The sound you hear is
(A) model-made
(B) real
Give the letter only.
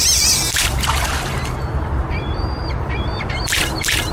A